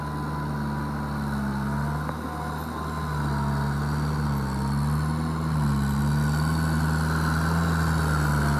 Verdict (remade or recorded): recorded